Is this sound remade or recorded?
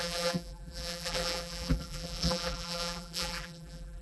remade